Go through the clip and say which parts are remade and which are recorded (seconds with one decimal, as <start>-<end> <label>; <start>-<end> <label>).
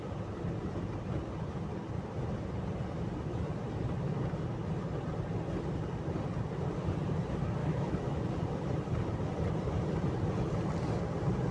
0.0-7.6 recorded; 7.6-8.2 remade; 8.2-11.5 recorded